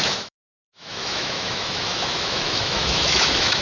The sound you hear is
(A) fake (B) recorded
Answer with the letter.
A